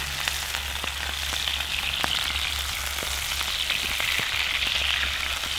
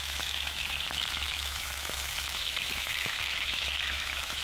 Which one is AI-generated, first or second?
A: second